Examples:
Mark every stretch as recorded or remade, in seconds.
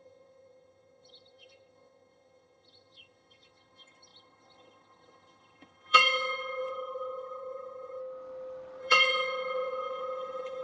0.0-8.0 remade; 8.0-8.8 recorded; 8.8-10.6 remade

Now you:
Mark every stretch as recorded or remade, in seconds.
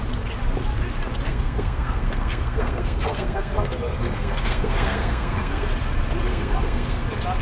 0.0-1.3 recorded; 1.3-5.7 remade; 5.7-6.3 recorded; 6.3-7.0 remade; 7.0-7.4 recorded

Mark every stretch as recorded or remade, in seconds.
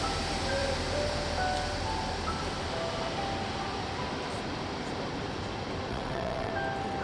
0.0-5.9 recorded; 5.9-6.5 remade; 6.5-7.0 recorded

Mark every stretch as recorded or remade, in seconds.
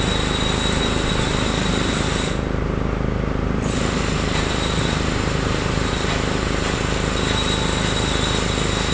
0.0-1.7 recorded; 1.7-6.8 remade; 6.8-8.9 recorded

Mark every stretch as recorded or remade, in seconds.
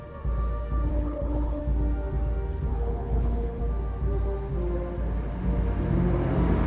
0.0-0.9 recorded; 0.9-1.6 remade; 1.6-2.7 recorded; 2.7-3.6 remade; 3.6-6.7 recorded